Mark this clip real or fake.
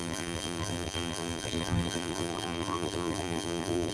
fake